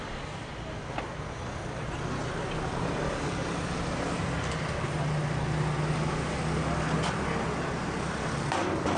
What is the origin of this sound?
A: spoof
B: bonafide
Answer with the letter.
B